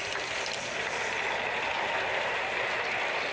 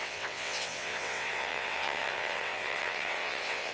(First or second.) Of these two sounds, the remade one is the second